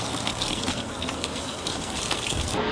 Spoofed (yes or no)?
yes